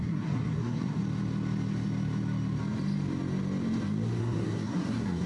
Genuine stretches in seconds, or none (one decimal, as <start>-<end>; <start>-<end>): 1.0-4.2